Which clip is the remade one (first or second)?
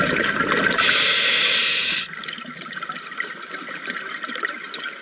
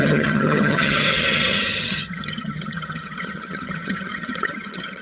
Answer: second